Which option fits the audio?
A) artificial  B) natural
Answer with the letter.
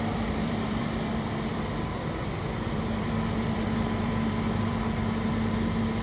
A